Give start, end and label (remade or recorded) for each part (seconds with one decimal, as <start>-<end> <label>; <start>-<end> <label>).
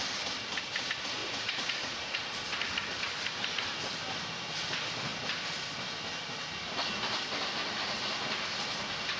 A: 0.0-1.2 recorded; 1.2-2.2 remade; 2.2-9.2 recorded